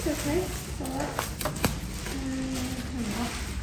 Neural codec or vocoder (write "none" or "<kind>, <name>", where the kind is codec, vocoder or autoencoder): none